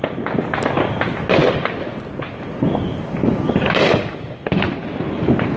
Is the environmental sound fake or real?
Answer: real